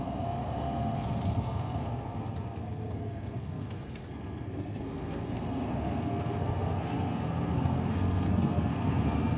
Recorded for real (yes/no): no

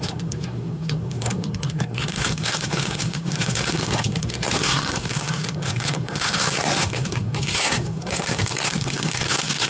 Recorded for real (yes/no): no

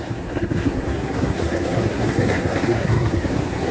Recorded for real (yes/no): no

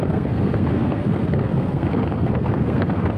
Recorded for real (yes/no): no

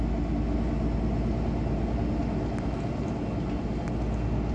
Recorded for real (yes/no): yes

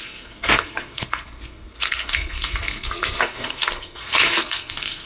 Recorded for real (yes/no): no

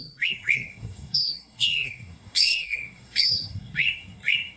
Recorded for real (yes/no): no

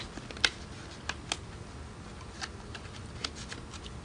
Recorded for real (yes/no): yes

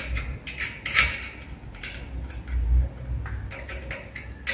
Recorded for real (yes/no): yes